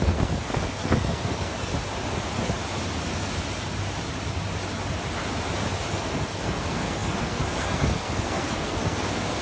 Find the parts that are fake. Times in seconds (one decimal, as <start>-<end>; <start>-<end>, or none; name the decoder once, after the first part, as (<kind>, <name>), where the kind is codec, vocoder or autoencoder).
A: 0.0-1.7 (codec, SNAC); 5.9-9.4